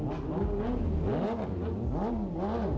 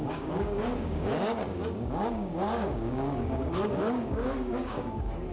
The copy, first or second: second